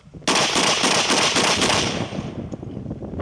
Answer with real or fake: real